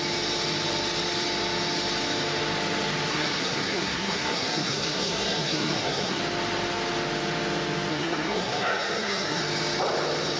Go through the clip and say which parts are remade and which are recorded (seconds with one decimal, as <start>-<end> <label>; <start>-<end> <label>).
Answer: 0.0-3.1 recorded; 3.1-6.2 remade; 6.2-7.9 recorded; 7.9-9.4 remade; 9.4-10.4 recorded

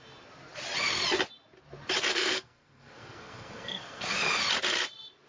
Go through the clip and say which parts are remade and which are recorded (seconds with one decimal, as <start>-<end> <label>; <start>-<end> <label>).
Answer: 0.0-2.1 recorded; 2.1-4.1 remade; 4.1-5.3 recorded

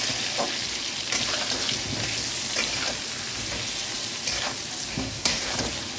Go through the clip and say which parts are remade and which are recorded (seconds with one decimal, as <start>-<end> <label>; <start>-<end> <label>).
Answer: 0.0-4.9 recorded; 4.9-5.5 remade; 5.5-6.0 recorded

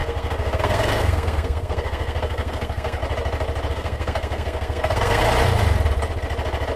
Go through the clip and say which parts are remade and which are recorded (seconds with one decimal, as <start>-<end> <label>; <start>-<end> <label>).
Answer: 0.0-3.0 remade; 3.0-3.7 recorded; 3.7-5.2 remade; 5.2-6.8 recorded

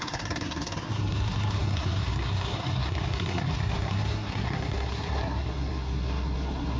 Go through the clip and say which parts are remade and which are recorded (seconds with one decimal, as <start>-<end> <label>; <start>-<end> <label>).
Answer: 0.0-6.8 remade

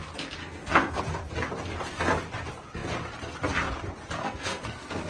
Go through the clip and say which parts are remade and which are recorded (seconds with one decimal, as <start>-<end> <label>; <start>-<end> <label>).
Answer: 0.0-0.4 recorded; 0.4-1.0 remade; 1.0-4.2 recorded; 4.2-5.1 remade

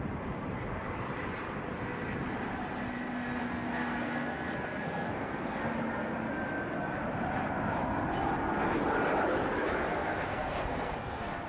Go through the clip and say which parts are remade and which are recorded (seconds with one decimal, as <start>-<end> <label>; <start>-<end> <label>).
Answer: 0.0-3.4 recorded; 3.4-5.6 remade; 5.6-9.9 recorded; 9.9-11.5 remade

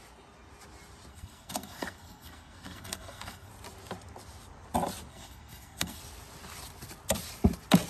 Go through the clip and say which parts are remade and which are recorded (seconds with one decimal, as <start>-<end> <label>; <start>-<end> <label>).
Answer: 0.0-1.1 recorded; 1.1-3.5 remade; 3.5-5.1 recorded; 5.1-6.0 remade; 6.0-7.9 recorded